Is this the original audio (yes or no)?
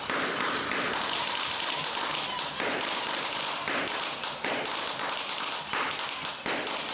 yes